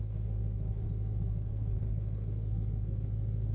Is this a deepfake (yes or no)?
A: yes